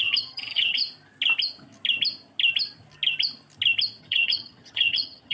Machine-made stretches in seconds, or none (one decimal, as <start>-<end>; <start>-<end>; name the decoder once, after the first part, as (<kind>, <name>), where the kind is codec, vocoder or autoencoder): 0.0-0.8 (vocoder, HiFi-GAN); 4.0-5.3